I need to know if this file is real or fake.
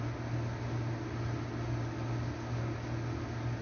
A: real